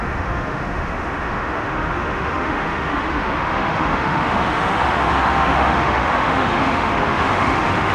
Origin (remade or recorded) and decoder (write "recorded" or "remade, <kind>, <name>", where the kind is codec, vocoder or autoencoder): remade, autoencoder, DAC-VAE